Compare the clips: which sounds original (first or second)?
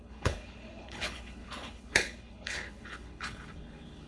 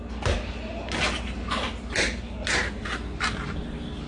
second